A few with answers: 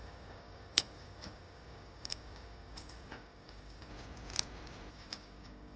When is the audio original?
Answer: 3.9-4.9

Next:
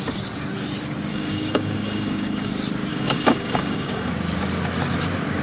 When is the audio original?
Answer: 0.0-1.1; 2.5-2.9; 4.1-5.4

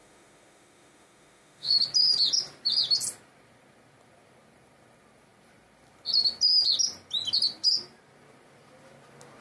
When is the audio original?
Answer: 1.8-9.4

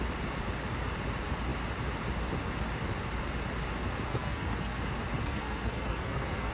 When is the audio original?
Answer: 0.0-4.1; 4.8-5.2

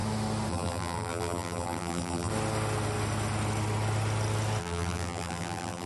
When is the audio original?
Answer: 0.0-0.5; 2.3-4.6

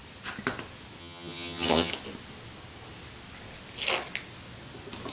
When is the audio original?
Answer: 0.0-1.0; 1.9-5.1